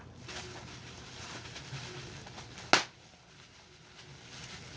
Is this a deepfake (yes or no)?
no